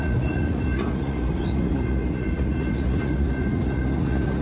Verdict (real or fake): fake